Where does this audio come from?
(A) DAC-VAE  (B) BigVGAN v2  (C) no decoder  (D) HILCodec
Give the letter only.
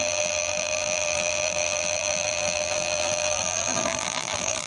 B